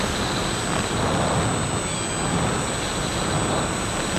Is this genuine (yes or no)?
yes